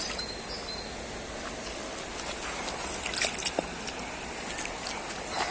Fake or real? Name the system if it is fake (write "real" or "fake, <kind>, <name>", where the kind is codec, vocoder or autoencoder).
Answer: real